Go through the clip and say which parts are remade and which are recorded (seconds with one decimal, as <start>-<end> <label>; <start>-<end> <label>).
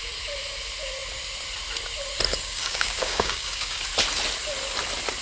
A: 0.0-2.3 recorded; 2.3-3.8 remade; 3.8-5.2 recorded